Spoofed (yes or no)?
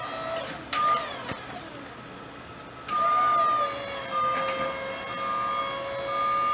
no